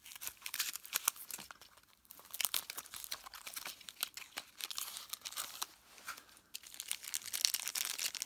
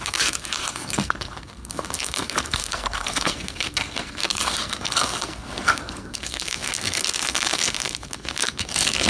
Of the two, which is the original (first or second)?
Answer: first